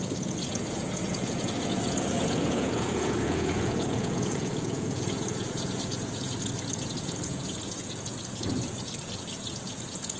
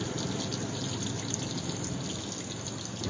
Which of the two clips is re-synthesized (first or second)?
first